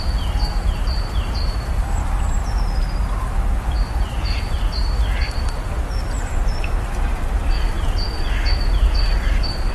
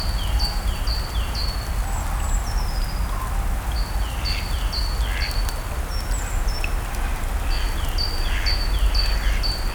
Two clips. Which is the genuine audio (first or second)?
second